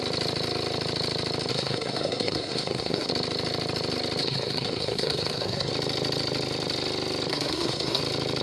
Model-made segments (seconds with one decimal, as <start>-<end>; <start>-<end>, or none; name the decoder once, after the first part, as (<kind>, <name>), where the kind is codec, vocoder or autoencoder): 1.5-3.1 (codec, SNAC); 4.2-5.7; 7.3-8.0